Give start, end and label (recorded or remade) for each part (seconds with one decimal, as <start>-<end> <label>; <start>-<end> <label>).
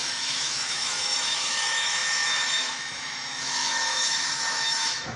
0.0-5.2 remade